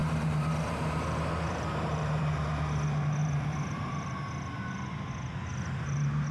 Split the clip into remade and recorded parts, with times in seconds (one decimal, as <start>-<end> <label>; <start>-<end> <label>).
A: 0.0-2.3 remade; 2.3-3.2 recorded; 3.2-4.2 remade; 4.2-5.5 recorded; 5.5-6.3 remade